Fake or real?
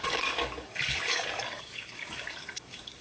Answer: fake